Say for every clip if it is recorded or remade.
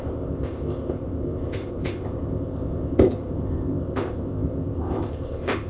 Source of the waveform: remade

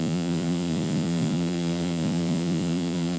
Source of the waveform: remade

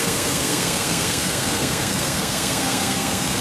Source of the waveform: remade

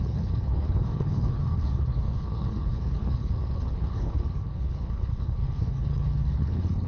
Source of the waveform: remade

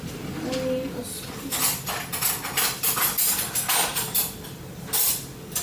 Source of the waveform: recorded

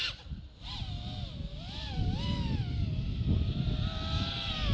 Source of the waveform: recorded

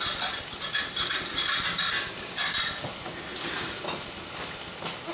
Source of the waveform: recorded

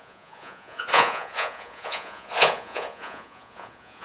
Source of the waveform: remade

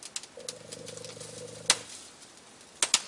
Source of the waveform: recorded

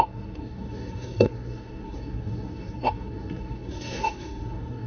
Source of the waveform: remade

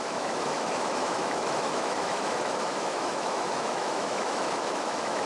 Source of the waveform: remade